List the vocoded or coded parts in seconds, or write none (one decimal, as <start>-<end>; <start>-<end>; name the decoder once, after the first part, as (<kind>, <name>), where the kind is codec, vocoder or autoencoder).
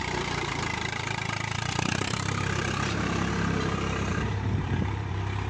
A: 0.0-3.3 (vocoder, BigVGAN v2); 4.1-5.1